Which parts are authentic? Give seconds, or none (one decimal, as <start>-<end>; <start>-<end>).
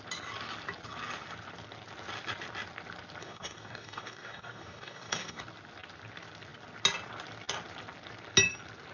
0.0-3.2; 5.4-8.9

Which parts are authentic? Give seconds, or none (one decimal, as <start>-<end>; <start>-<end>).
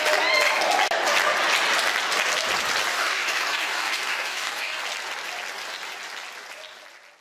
0.0-2.9; 4.8-7.2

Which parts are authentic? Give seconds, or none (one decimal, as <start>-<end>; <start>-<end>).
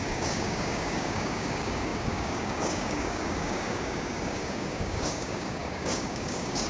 none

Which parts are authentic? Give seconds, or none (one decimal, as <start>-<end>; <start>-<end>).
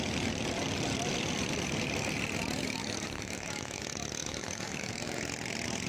0.0-2.8; 3.8-4.2; 5.2-5.9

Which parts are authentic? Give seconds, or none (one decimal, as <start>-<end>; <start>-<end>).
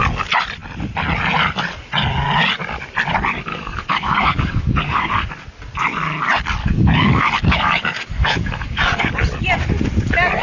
0.0-3.5; 5.1-6.6; 9.2-10.4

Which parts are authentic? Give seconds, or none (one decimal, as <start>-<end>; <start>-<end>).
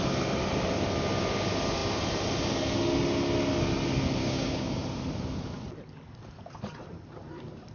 0.0-4.2; 4.8-7.7